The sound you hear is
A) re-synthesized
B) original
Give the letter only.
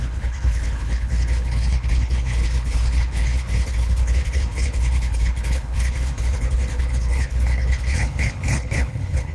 A